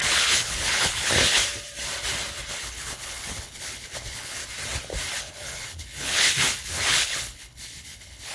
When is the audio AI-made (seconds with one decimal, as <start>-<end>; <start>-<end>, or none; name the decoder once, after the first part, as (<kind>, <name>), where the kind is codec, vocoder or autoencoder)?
0.0-1.4 (codec, HILCodec); 2.5-4.4; 5.2-8.3